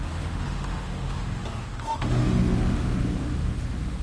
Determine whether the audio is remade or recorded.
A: remade